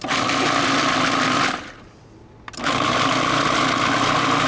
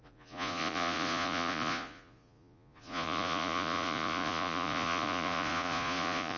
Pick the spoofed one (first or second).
second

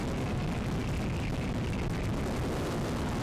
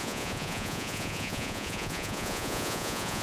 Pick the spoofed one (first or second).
second